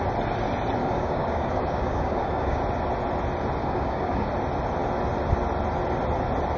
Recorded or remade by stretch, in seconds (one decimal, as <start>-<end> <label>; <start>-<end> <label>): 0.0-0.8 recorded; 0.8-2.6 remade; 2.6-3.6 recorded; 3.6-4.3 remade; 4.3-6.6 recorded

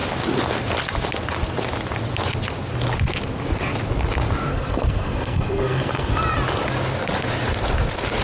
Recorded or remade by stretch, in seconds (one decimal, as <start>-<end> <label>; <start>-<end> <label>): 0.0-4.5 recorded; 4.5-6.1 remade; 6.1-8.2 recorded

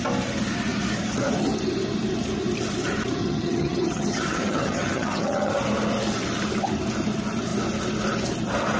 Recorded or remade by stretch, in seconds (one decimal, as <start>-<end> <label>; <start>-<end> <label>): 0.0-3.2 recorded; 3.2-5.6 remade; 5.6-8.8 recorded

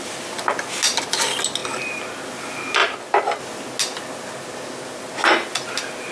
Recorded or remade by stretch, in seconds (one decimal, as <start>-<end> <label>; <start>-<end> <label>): 0.0-6.1 recorded

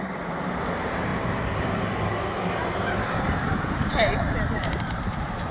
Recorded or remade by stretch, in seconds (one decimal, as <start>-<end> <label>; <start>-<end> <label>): 0.0-1.1 remade; 1.1-3.6 recorded; 3.6-5.5 remade

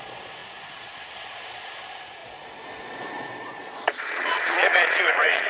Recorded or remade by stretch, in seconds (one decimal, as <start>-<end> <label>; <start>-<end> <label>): 0.0-5.5 remade

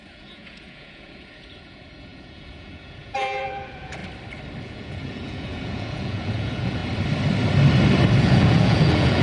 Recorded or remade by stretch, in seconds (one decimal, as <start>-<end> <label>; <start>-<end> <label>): 0.0-4.0 remade; 4.0-4.6 recorded; 4.6-6.8 remade; 6.8-8.2 recorded; 8.2-9.2 remade

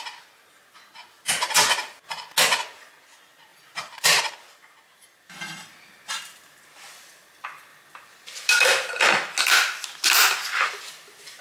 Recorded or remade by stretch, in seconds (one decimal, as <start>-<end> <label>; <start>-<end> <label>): 0.0-3.5 recorded; 3.5-4.2 remade; 4.2-7.7 recorded; 7.7-8.9 remade; 8.9-11.4 recorded